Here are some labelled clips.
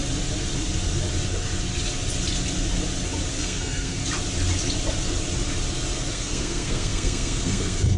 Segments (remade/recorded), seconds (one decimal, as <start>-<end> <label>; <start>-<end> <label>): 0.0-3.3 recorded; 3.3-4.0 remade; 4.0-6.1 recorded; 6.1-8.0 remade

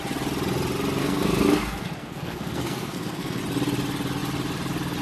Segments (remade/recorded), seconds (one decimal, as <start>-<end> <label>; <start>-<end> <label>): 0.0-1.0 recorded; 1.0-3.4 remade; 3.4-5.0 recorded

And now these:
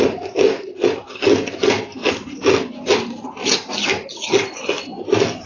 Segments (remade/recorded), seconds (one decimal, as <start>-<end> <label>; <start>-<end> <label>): 0.0-5.5 recorded

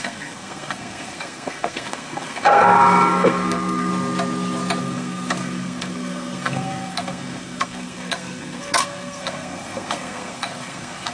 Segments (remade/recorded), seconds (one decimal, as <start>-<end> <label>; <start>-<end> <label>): 0.0-3.9 remade; 3.9-4.8 recorded; 4.8-11.1 remade

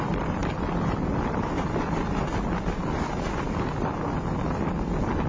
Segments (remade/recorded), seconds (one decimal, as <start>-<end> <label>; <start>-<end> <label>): 0.0-5.3 recorded